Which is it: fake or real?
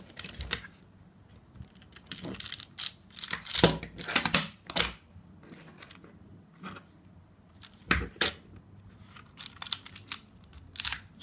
real